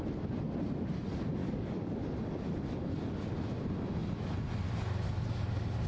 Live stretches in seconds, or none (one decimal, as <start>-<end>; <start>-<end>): 0.0-1.4; 2.1-5.9